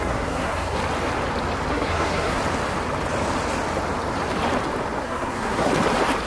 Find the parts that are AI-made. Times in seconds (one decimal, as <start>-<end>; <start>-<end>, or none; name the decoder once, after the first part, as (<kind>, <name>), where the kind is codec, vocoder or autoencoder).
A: 0.0-0.8 (codec, SNAC); 1.7-2.4; 5.0-5.7